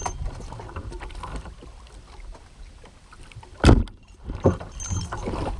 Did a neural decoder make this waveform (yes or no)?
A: yes